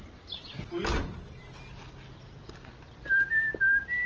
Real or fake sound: real